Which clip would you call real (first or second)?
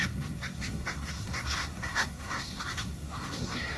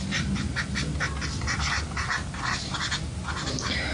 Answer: second